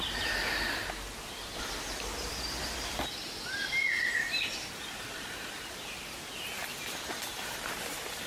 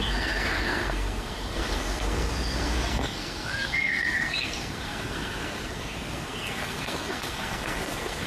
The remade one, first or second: second